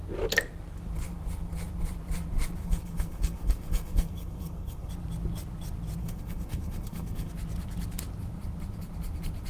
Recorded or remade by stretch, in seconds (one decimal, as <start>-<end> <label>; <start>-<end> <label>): 0.0-2.6 recorded; 2.6-4.9 remade; 4.9-6.0 recorded; 6.0-7.3 remade; 7.3-9.5 recorded